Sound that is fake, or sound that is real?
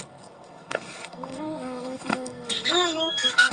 fake